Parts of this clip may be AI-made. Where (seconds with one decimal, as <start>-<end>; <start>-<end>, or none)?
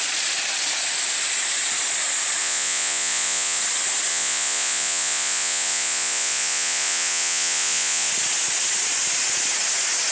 2.4-3.6; 4.1-8.1